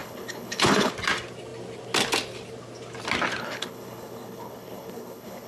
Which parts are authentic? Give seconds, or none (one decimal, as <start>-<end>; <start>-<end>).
0.9-3.4